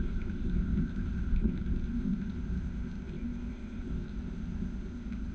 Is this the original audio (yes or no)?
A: no